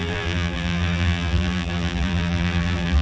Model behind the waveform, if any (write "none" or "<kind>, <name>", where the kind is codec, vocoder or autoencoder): vocoder, BigVGAN v2